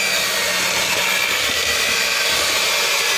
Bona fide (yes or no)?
yes